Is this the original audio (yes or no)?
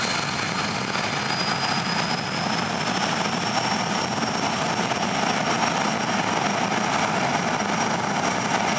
yes